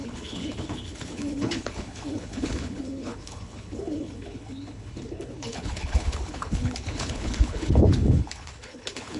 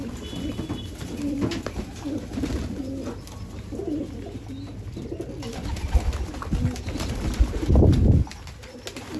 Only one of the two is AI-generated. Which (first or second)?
first